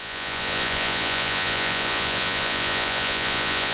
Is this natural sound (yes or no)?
no